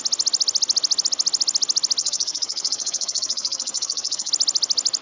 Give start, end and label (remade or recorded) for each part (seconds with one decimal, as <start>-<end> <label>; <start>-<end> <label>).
0.0-2.0 recorded; 2.0-4.3 remade; 4.3-5.0 recorded